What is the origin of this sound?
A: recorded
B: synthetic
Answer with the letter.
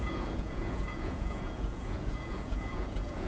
B